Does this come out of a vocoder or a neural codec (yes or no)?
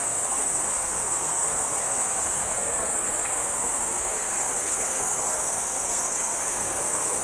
yes